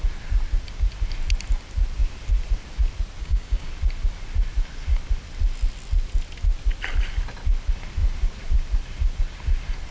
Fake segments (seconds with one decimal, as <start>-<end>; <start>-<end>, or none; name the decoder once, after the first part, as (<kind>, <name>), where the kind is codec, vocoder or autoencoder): 3.2-3.7 (codec, DAC)